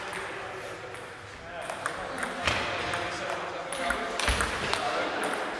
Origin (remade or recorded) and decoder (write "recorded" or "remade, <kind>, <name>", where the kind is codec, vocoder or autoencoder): recorded